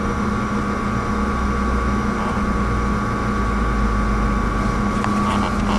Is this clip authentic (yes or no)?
yes